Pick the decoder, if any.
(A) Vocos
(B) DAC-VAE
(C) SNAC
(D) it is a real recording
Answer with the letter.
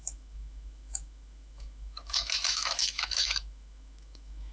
B